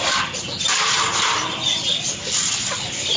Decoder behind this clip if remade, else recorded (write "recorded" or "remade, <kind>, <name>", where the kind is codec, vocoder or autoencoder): recorded